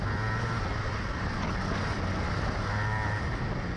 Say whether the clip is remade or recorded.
recorded